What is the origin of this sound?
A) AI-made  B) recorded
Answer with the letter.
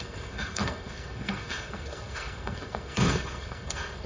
A